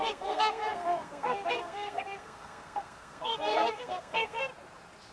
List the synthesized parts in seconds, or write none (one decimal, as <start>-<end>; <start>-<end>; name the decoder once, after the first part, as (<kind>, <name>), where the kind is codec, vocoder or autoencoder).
0.0-4.5 (codec, SNAC)